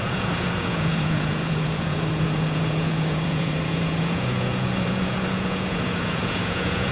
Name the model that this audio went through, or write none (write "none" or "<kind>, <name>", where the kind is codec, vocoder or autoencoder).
vocoder, Vocos